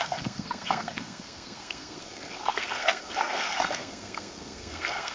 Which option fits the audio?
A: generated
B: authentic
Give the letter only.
A